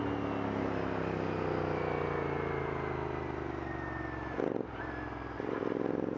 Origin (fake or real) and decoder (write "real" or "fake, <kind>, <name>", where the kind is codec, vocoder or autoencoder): real